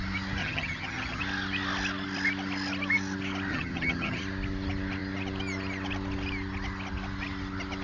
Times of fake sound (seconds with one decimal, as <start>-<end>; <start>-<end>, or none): 0.4-1.2; 3.5-4.2